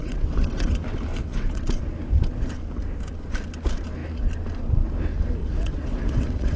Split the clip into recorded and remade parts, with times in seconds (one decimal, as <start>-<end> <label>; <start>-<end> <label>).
0.0-0.7 remade; 0.7-1.1 recorded; 1.1-1.6 remade; 1.6-5.4 recorded; 5.4-6.6 remade